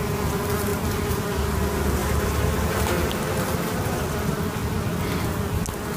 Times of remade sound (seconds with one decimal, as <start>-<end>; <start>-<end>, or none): 2.0-3.3